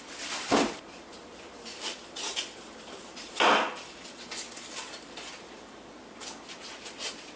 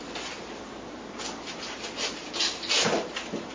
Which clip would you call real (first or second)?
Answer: second